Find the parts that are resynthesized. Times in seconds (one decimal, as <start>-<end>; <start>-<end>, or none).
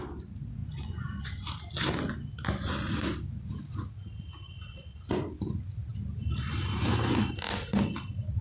0.6-1.2